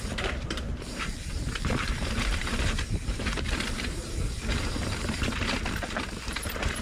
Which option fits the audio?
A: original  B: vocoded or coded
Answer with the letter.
B